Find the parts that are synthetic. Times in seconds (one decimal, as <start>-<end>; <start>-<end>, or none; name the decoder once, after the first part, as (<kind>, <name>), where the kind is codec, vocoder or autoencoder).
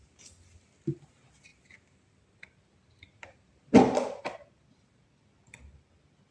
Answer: none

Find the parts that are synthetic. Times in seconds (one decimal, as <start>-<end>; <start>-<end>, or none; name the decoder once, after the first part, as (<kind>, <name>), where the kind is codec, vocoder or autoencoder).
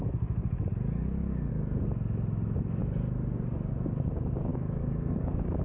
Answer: 4.5-5.6 (codec, DAC)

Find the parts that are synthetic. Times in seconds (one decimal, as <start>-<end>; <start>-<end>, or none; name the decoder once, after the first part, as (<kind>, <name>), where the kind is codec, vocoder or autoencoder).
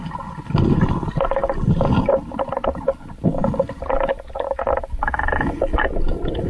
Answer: none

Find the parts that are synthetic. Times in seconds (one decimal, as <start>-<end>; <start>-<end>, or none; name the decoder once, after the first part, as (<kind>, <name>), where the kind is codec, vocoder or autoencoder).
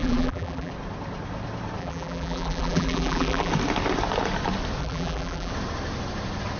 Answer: 0.0-0.7 (vocoder, BigVGAN v2); 1.8-3.5; 4.8-5.5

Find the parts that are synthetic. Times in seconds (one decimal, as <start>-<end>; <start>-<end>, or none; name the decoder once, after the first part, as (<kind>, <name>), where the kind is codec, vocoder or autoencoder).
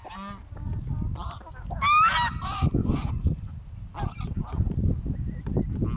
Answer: 2.8-3.5 (vocoder, Vocos)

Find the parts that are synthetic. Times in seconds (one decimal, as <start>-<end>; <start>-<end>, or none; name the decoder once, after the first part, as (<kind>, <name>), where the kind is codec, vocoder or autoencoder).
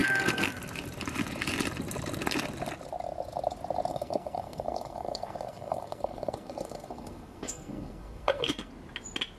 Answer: 0.0-0.6 (codec, SNAC); 3.9-8.7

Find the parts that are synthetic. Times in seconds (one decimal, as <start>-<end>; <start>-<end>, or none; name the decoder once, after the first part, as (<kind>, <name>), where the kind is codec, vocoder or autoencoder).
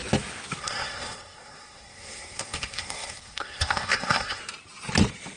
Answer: 0.6-4.4 (codec, SNAC)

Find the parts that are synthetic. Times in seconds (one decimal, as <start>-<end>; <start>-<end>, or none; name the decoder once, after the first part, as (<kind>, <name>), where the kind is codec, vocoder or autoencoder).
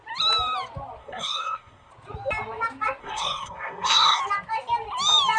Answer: 1.0-1.9 (codec, SNAC); 3.0-4.2